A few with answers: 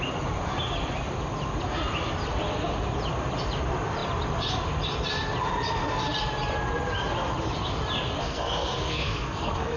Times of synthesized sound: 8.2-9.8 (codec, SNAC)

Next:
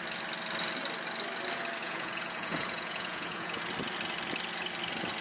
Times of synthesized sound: 1.8-3.6 (vocoder, Vocos)

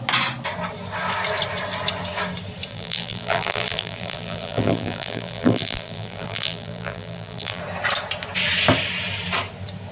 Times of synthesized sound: 2.7-7.6 (vocoder, BigVGAN v2)

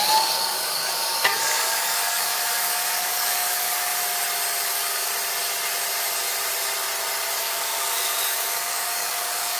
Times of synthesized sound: 0.0-3.9 (codec, DAC); 4.6-5.1; 7.3-9.6

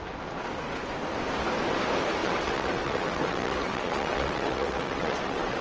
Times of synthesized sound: 2.2-5.6 (vocoder, WaveNeXt)

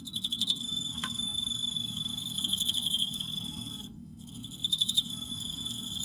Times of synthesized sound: 0.0-6.0 (codec, SNAC)